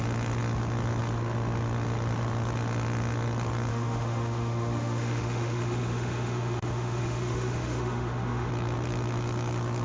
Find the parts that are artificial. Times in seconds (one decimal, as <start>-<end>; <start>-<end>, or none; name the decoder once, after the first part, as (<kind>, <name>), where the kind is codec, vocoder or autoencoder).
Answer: 3.7-8.5 (autoencoder, DAC-VAE)

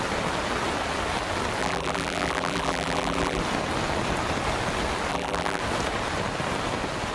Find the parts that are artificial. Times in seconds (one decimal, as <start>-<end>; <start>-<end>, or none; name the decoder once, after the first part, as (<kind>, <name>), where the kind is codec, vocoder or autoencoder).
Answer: 1.6-3.4 (vocoder, BigVGAN v2); 5.1-5.6

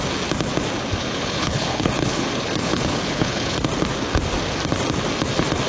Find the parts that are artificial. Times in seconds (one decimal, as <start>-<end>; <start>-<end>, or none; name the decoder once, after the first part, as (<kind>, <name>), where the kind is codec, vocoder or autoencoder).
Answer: 1.0-3.6 (codec, HILCodec)

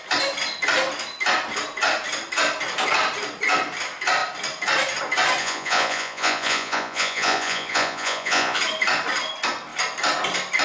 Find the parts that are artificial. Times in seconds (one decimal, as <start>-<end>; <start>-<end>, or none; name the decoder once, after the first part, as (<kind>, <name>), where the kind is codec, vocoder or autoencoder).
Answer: 5.4-8.6 (vocoder, Vocos)

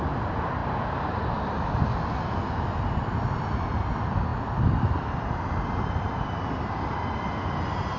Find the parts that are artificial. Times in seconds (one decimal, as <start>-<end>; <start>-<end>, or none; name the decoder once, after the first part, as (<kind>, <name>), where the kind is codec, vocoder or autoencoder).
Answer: none